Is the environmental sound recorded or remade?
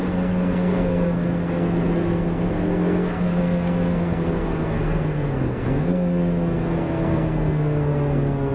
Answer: remade